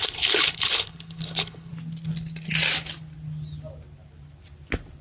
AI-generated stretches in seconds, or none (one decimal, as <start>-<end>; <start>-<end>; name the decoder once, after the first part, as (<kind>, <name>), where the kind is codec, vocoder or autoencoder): 0.0-1.7 (codec, HILCodec)